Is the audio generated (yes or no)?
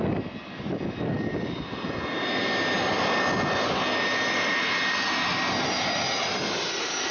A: no